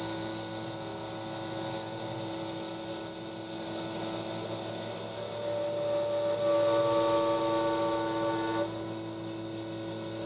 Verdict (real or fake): real